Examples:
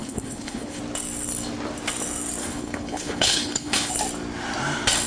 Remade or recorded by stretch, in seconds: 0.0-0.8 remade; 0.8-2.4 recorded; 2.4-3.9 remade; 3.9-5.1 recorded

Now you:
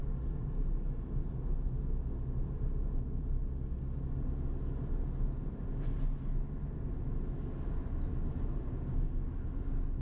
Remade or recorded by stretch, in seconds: 0.0-10.0 recorded